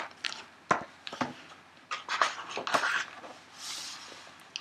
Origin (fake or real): real